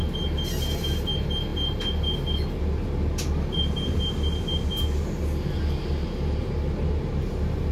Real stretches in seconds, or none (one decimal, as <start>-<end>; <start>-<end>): 0.0-7.7

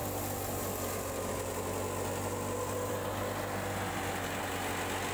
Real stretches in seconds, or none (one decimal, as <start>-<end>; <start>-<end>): 0.0-5.1

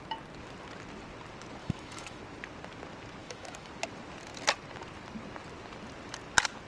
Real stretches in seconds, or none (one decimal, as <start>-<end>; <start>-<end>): 0.0-1.6; 2.2-3.2; 3.7-6.7

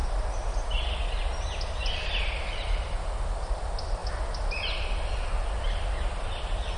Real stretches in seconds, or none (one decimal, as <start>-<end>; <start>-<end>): 0.0-6.8

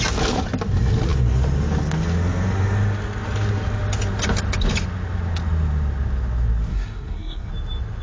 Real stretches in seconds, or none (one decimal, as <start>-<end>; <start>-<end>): 0.0-6.7; 7.5-8.0

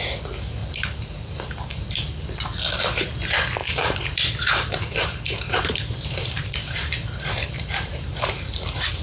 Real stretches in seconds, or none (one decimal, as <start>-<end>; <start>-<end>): 0.0-0.6; 1.8-3.6